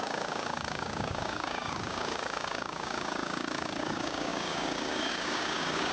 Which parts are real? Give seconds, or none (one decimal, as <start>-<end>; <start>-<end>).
none

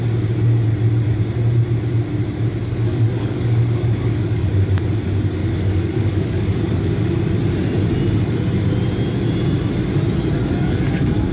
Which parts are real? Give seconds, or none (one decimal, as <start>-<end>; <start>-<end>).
0.0-2.6; 4.5-5.4; 7.3-10.4

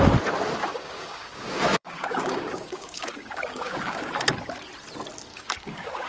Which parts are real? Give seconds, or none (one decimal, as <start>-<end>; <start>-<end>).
0.0-0.6; 4.1-5.3

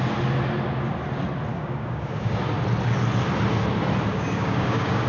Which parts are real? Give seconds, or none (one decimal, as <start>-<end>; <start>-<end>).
0.0-1.5; 2.4-4.1